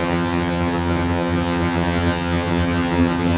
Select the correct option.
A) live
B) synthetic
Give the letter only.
B